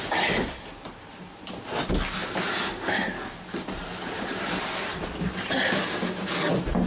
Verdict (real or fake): real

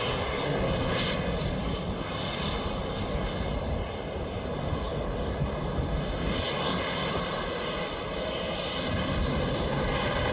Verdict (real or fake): real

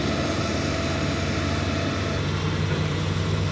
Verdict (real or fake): fake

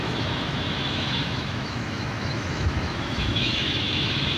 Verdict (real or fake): fake